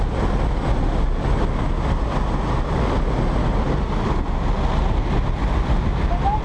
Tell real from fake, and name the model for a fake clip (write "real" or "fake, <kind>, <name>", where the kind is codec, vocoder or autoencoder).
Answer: real